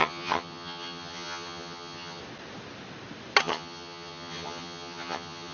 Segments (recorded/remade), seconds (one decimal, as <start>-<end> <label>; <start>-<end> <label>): 0.0-2.2 remade; 2.2-3.4 recorded; 3.4-5.5 remade